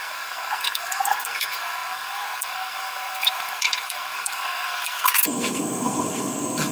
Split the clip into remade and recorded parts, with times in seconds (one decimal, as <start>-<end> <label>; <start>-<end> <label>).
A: 0.0-6.7 remade